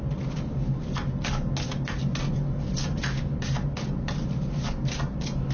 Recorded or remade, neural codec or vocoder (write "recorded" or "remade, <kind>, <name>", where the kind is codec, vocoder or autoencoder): recorded